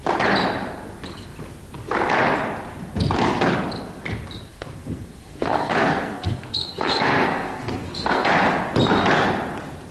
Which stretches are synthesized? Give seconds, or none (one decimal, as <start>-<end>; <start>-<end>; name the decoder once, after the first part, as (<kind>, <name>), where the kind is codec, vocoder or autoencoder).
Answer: 4.5-8.3 (codec, SNAC)